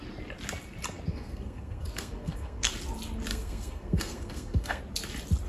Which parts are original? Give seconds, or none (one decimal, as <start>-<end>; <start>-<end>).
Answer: 0.0-1.1; 2.7-3.3; 4.8-5.5